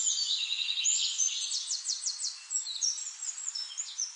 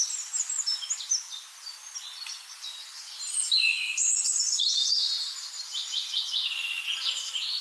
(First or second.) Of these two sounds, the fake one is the first